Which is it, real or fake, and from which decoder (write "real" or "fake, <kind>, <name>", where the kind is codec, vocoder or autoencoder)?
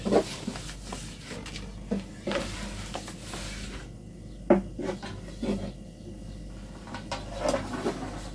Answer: real